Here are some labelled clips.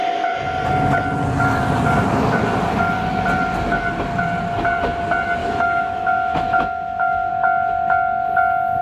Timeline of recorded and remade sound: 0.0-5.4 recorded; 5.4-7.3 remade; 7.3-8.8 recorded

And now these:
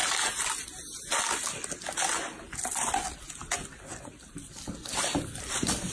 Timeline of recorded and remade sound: 0.0-5.9 recorded